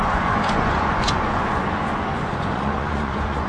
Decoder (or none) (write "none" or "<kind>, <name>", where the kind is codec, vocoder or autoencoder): vocoder, Vocos